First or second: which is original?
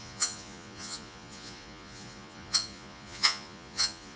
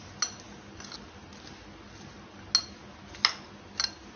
second